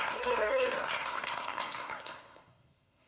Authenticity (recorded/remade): remade